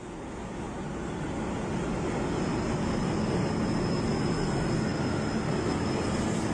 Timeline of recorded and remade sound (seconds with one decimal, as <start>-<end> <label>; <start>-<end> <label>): 0.0-6.5 recorded

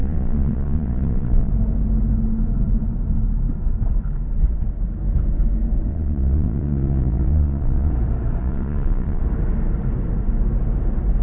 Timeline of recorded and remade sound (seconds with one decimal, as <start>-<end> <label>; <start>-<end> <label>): 0.0-1.5 remade; 1.5-5.9 recorded; 5.9-7.9 remade; 7.9-8.4 recorded; 8.4-9.2 remade; 9.2-11.2 recorded